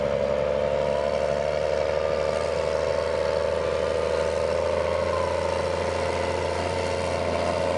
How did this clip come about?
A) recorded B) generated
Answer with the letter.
A